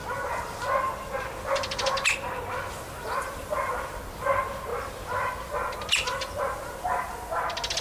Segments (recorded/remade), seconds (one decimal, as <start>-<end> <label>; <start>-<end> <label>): 0.0-7.8 recorded